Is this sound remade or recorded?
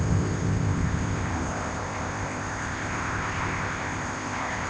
remade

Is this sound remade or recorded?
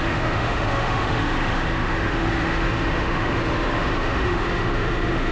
remade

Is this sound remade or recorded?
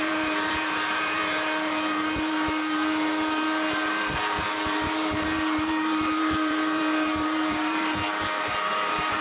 remade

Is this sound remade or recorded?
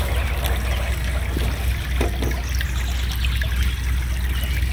recorded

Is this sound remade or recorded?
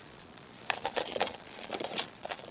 remade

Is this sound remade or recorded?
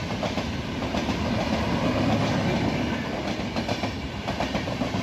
recorded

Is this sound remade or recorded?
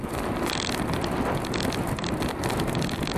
recorded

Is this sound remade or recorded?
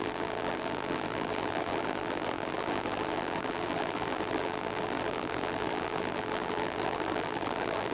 remade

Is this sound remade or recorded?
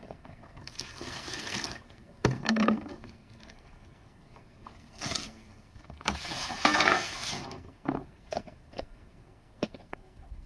remade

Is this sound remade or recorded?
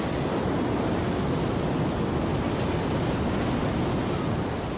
recorded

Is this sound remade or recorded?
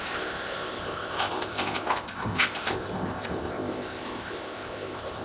remade